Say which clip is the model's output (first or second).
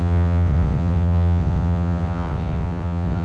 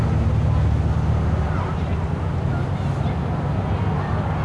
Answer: first